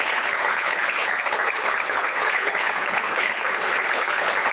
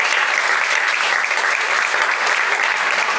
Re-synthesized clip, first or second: first